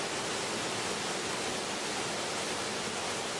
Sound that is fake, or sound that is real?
real